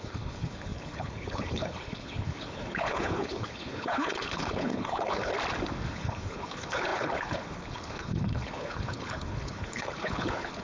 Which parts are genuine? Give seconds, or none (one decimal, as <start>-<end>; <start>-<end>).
5.3-5.9